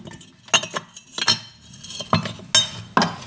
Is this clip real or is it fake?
real